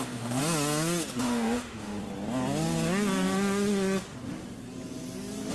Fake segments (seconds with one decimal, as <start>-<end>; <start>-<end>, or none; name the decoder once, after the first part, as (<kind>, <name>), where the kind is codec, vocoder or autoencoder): 0.0-0.4 (autoencoder, DAC-VAE); 1.2-2.0